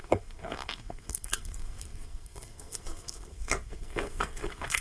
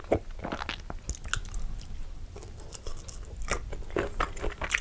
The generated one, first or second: first